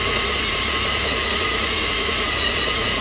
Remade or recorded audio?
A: remade